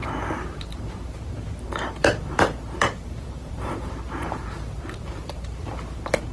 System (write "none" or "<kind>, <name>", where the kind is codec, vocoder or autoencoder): vocoder, BigVGAN v2